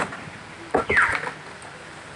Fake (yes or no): no